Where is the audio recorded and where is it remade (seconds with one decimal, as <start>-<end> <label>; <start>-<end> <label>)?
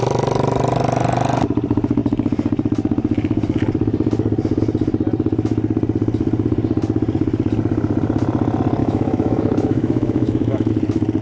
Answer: 0.0-8.8 recorded; 8.8-10.7 remade; 10.7-11.2 recorded